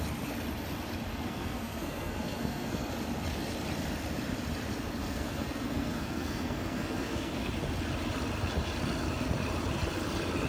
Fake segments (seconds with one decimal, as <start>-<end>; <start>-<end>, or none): 1.1-2.9; 5.0-7.5